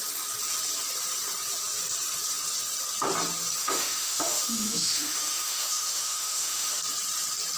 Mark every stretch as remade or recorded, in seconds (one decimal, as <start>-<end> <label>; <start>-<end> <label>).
0.0-3.6 recorded; 3.6-6.8 remade; 6.8-7.6 recorded